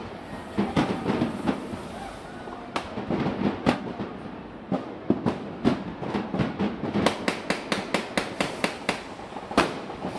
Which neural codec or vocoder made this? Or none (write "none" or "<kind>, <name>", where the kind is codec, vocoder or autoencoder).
none